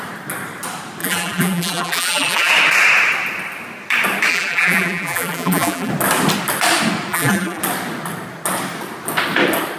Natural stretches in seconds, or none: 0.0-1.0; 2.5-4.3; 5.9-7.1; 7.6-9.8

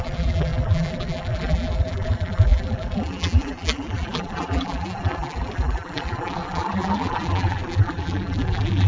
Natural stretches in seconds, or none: none

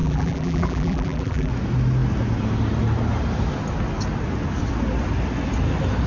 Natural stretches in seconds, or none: 1.5-6.1

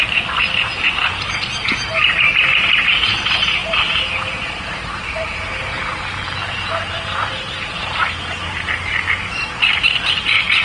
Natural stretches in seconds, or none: 3.6-4.1; 7.8-10.1

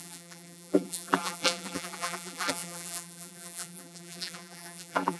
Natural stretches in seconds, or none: none

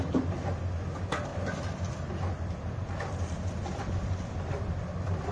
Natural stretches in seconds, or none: 0.0-1.3; 4.5-5.3

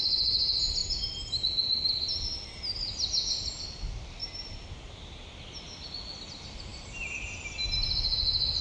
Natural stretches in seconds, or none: 0.0-0.8; 1.4-4.2; 5.3-6.7; 7.4-8.6

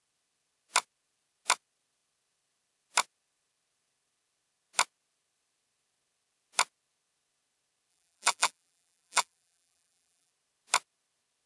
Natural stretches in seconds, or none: 0.0-7.9; 10.3-11.5